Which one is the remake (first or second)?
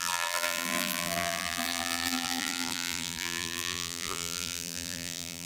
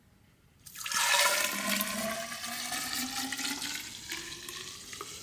first